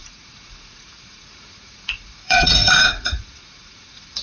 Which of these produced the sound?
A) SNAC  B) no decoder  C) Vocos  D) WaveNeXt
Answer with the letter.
C